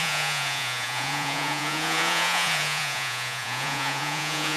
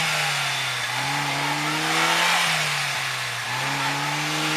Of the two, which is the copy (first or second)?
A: first